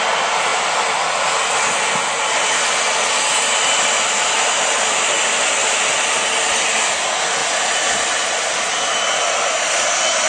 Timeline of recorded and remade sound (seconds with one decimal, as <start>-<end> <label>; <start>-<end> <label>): 0.0-10.3 recorded